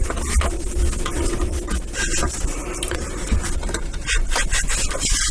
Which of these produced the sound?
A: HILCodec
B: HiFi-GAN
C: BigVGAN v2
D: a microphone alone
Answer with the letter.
C